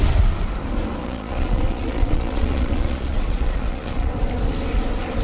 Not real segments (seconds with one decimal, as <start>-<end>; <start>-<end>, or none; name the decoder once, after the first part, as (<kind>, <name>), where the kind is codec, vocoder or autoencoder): 1.0-4.1 (vocoder, Vocos)